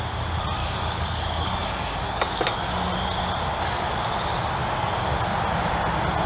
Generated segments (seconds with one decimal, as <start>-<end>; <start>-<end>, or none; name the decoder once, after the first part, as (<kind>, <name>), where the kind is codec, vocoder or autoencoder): 0.6-2.7 (codec, DAC)